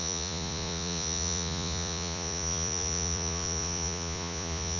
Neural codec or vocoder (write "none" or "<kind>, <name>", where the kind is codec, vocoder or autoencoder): vocoder, Vocos